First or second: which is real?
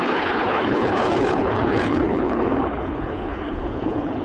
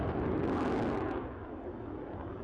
second